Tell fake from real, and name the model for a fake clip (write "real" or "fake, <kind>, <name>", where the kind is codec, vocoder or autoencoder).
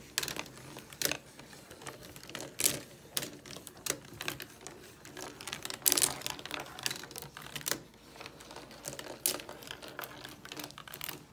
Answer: real